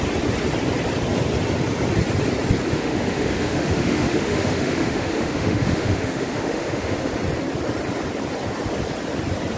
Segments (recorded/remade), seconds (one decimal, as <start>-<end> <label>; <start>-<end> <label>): 0.0-2.7 recorded; 2.7-7.1 remade; 7.1-9.6 recorded